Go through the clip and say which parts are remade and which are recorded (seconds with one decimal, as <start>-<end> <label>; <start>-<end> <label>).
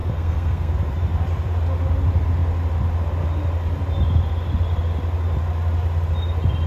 0.0-0.7 remade; 0.7-6.7 recorded